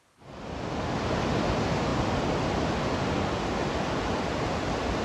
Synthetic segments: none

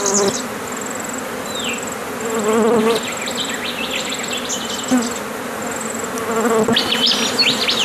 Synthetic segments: none

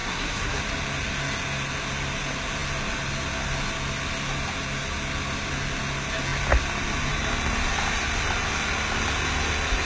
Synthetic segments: 0.0-0.6 (codec, SNAC)

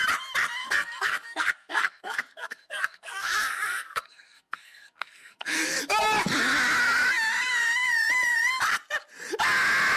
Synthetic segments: 0.6-5.8 (codec, SNAC)

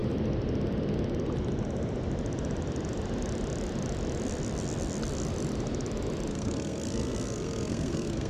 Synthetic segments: 6.3-8.3 (codec, SNAC)

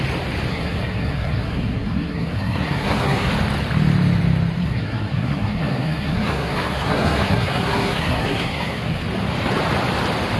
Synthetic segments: 0.5-3.3 (codec, SNAC); 4.6-9.0